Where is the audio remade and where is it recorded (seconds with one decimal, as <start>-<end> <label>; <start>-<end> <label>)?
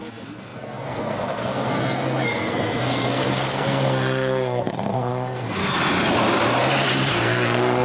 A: 0.0-5.6 remade; 5.6-7.1 recorded; 7.1-7.8 remade